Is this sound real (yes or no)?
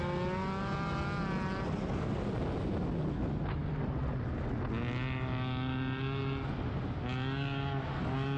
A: yes